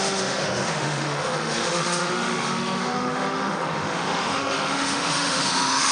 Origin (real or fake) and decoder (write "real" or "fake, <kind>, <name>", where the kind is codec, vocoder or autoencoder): fake, autoencoder, DAC-VAE